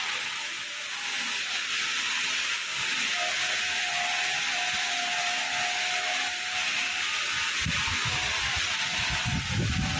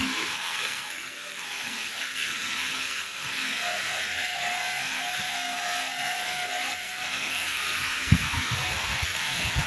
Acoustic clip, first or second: first